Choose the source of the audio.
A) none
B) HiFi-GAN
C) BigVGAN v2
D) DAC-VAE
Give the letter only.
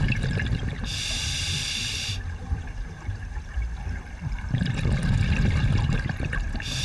C